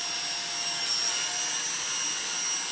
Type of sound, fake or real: real